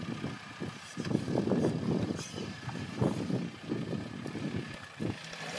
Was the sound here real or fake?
real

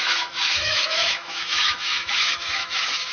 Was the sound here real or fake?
fake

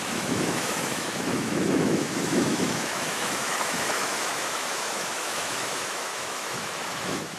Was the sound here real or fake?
fake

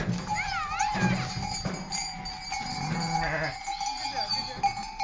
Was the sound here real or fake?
real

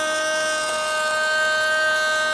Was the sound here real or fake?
real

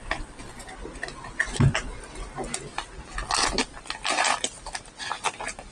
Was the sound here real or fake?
real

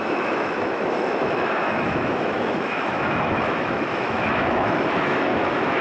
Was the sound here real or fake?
fake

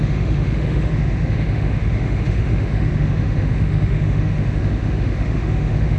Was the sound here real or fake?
fake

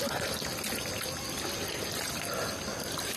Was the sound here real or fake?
real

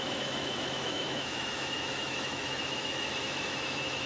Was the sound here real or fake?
fake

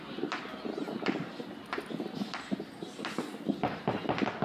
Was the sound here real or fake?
real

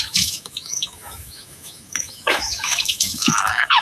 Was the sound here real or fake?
fake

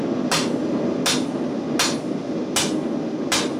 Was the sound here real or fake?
real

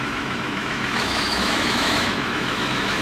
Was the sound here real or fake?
fake